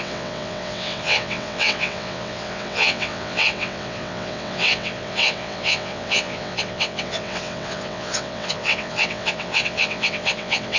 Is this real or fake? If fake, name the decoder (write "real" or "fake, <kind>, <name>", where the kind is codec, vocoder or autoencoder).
fake, vocoder, WaveNeXt